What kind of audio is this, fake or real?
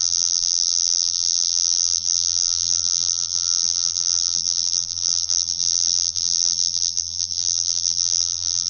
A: fake